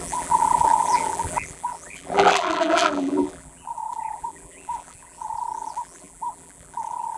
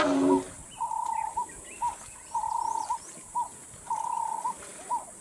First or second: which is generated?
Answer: first